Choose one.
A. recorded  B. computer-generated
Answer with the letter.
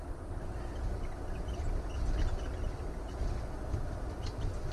A